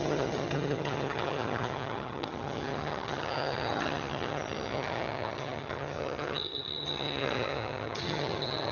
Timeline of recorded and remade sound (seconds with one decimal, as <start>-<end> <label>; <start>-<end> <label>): 0.0-8.7 remade